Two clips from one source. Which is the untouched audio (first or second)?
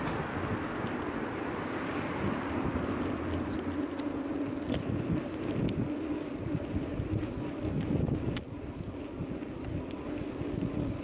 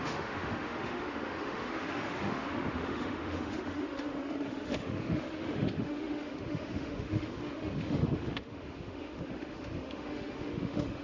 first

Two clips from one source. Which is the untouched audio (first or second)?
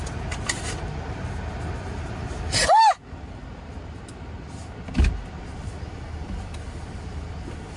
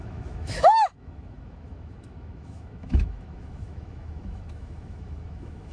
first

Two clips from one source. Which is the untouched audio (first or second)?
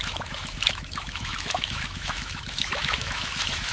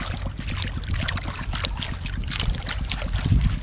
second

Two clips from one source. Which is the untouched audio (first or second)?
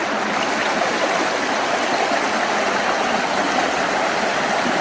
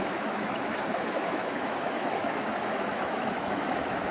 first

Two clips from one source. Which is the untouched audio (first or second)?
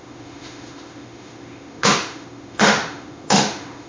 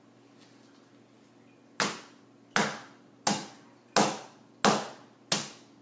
second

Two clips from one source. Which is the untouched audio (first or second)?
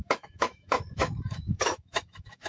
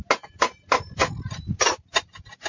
second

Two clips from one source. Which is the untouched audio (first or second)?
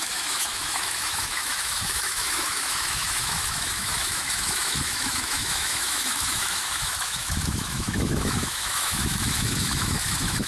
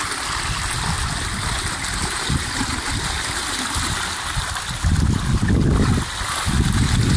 second